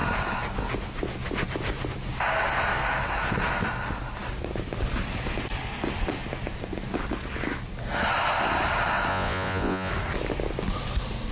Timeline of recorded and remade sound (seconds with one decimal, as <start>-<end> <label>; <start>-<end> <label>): 0.0-9.1 recorded; 9.1-9.9 remade; 9.9-11.3 recorded